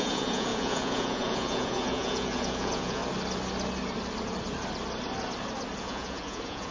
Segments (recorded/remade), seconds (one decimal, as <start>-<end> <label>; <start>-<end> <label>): 0.0-3.0 remade; 3.0-5.8 recorded; 5.8-6.7 remade